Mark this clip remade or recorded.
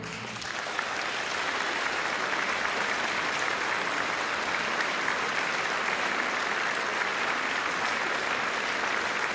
recorded